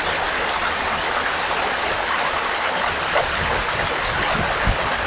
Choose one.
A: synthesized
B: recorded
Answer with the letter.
B